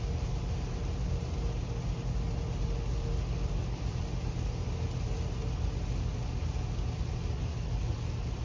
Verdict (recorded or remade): recorded